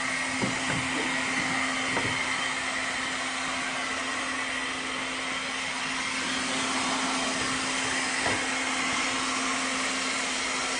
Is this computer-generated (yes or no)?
no